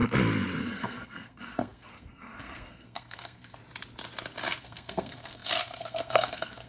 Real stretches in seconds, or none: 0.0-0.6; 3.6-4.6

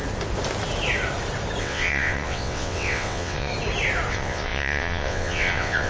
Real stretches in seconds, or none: 0.0-1.6; 3.5-4.1

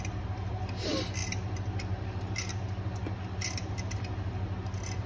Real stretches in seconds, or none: 0.0-5.1

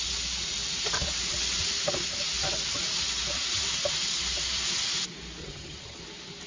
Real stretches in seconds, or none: 0.0-5.4; 6.0-6.5

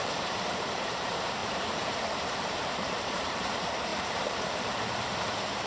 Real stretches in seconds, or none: none

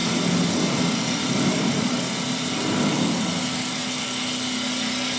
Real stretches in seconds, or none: 0.0-5.2

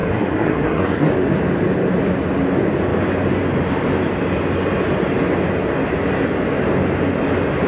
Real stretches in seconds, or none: 1.1-7.7